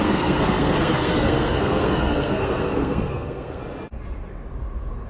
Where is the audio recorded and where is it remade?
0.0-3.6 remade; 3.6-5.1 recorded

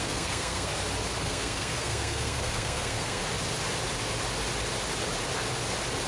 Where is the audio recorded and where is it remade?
0.0-0.7 remade; 0.7-1.2 recorded; 1.2-3.2 remade; 3.2-6.1 recorded